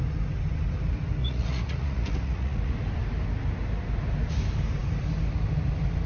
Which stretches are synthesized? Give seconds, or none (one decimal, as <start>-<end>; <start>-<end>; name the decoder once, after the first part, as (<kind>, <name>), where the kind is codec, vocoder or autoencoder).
1.2-2.7 (vocoder, Vocos)